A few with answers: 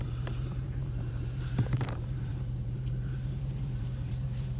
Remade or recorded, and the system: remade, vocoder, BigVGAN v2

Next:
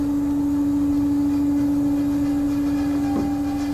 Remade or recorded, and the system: recorded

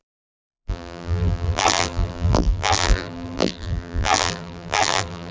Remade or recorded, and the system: remade, vocoder, BigVGAN v2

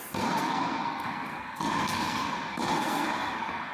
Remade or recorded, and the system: remade, codec, SNAC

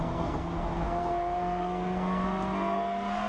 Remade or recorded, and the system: remade, codec, SNAC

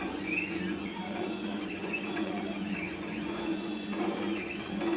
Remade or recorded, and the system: remade, vocoder, Vocos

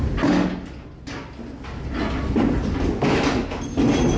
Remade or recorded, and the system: recorded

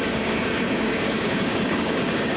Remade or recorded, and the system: remade, codec, DAC